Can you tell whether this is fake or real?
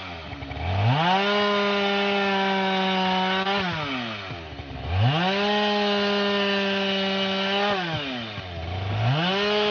real